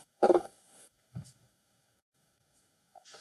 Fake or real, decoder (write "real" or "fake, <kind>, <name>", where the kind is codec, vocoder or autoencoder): fake, codec, DAC